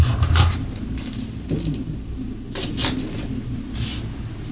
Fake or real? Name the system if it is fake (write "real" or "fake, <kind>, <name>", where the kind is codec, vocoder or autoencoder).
real